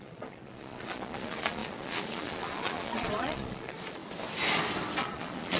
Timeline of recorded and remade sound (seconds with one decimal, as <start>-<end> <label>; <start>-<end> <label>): 0.0-4.0 remade; 4.0-5.0 recorded; 5.0-5.6 remade